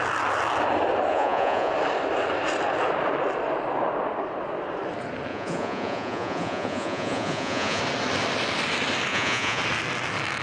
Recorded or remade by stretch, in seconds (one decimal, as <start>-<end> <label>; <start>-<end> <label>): 0.0-1.1 recorded; 1.1-1.7 remade; 1.7-5.3 recorded; 5.3-7.8 remade; 7.8-9.1 recorded; 9.1-9.6 remade; 9.6-10.4 recorded